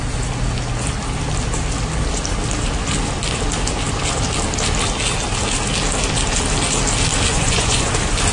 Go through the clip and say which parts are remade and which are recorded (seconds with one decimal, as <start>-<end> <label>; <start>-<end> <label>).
0.0-7.3 recorded; 7.3-7.9 remade; 7.9-8.3 recorded